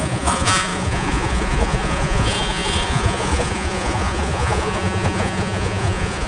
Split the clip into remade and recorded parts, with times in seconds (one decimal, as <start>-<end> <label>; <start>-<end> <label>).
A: 0.0-6.3 remade